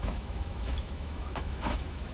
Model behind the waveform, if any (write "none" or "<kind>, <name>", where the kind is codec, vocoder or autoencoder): autoencoder, DAC-VAE